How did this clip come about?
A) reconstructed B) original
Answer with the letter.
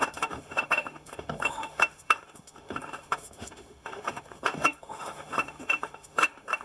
A